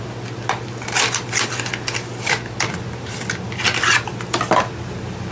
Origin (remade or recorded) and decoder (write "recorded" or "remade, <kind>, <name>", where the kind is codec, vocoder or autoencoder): recorded